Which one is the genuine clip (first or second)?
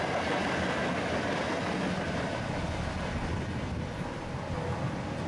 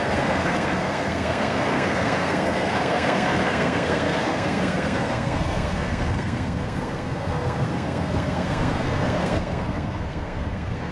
first